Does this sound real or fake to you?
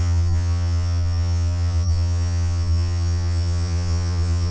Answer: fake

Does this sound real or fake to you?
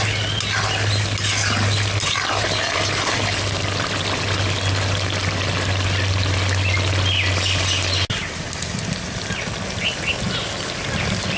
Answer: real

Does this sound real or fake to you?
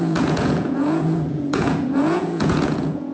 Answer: fake